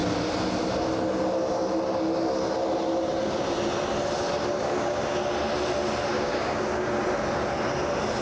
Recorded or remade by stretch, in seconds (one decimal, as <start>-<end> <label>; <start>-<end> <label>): 0.0-4.6 recorded; 4.6-5.2 remade; 5.2-6.1 recorded; 6.1-7.0 remade; 7.0-8.2 recorded